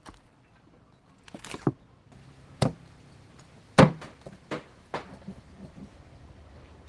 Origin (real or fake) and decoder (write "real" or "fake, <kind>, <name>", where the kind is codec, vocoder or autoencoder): fake, vocoder, BigVGAN v2